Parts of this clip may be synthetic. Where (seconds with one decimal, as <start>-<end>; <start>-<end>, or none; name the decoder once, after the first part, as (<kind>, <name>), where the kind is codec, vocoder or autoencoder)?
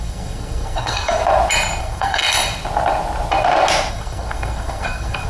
0.0-1.2 (codec, SNAC); 1.8-2.2; 3.9-5.3